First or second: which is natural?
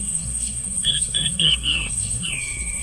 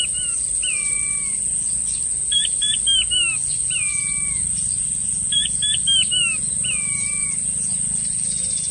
second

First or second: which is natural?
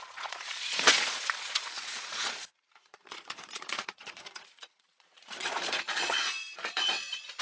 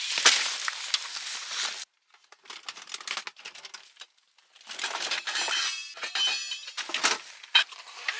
second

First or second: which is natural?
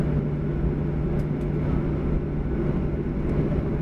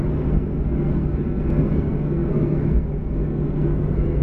first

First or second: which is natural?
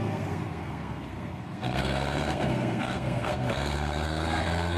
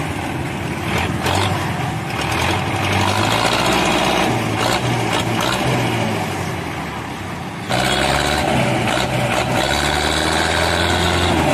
second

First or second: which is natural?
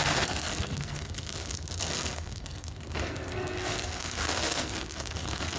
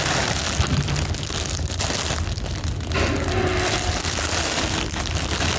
second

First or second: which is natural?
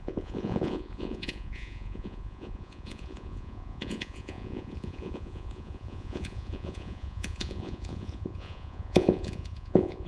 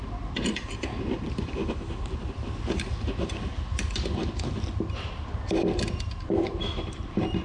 second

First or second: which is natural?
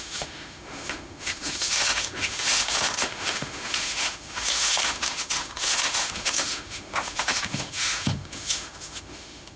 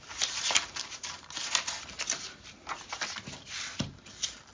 second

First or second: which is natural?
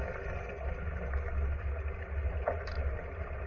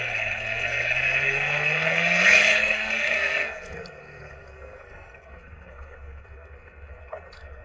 first